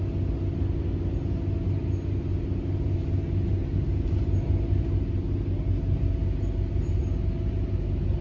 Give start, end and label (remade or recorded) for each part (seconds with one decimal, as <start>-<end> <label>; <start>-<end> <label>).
0.0-8.2 recorded